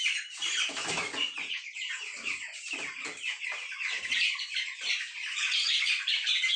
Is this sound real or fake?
fake